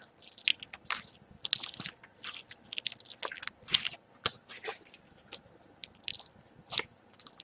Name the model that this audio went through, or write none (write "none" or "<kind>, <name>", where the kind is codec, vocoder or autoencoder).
none